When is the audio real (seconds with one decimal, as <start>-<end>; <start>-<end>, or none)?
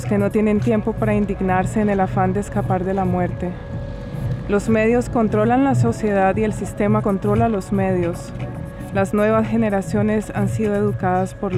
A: 0.0-11.6